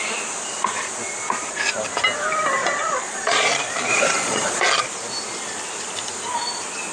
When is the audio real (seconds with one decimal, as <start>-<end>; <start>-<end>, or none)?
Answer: 0.0-2.6; 3.5-3.9; 4.6-6.9